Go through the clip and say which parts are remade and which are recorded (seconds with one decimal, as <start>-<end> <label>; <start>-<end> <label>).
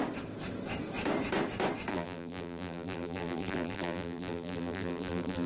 0.0-1.9 recorded; 1.9-5.5 remade